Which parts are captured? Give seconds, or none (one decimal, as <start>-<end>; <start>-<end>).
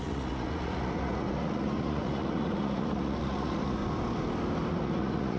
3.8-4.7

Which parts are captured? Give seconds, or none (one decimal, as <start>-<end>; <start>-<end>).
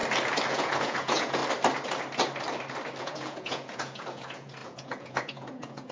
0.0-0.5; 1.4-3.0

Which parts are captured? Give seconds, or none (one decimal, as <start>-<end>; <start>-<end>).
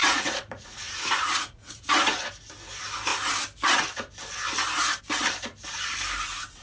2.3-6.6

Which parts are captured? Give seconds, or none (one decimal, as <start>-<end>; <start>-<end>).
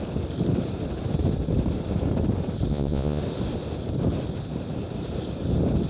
0.0-2.7; 3.2-5.9